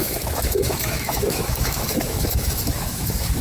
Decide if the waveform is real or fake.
fake